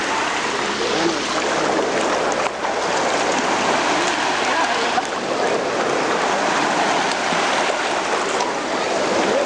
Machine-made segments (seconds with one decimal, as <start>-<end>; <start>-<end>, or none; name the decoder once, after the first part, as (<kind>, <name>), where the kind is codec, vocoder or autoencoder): none